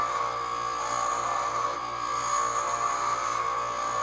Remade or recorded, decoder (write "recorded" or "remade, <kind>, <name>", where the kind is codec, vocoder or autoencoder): recorded